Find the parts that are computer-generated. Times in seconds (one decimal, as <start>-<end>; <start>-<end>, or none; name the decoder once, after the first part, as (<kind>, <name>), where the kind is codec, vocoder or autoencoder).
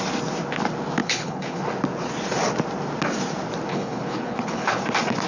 1.0-1.6 (codec, HILCodec); 3.7-4.8